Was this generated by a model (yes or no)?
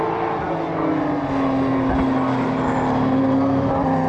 no